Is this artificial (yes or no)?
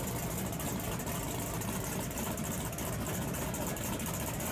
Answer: no